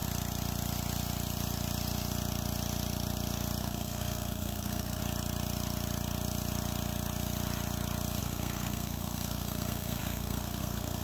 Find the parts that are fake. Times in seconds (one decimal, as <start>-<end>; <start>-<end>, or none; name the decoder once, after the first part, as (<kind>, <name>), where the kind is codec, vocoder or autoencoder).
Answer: 3.6-5.0 (codec, SNAC); 8.2-11.0

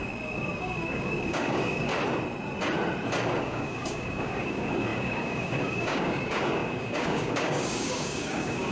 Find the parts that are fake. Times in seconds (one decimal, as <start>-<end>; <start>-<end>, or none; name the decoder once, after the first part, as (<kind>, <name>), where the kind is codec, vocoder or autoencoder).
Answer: 0.0-1.9 (codec, DAC); 3.4-8.7

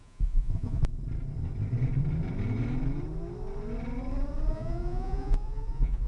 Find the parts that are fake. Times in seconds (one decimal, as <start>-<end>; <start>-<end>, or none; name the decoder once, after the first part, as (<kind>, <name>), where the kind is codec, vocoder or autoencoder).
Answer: 0.0-0.8 (vocoder, Vocos); 4.5-6.1

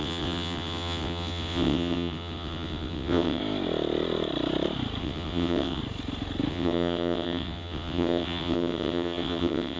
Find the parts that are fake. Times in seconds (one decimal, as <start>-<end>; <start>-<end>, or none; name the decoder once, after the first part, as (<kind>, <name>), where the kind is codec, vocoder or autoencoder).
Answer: 0.0-3.4 (vocoder, WaveNeXt); 5.0-5.8; 6.5-9.8